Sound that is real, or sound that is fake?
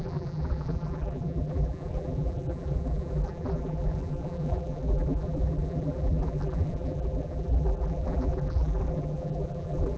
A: fake